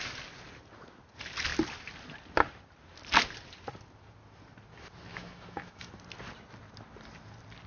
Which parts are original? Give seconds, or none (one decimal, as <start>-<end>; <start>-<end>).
0.0-5.1; 5.9-7.7